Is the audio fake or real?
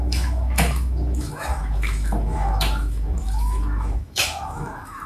fake